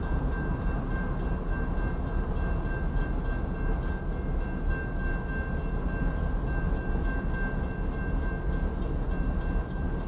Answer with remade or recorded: recorded